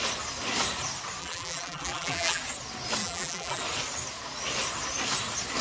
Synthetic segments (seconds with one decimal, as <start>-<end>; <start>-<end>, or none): 1.2-2.4; 3.0-3.6